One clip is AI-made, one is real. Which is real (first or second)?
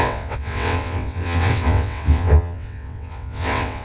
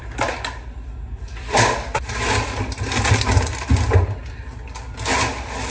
second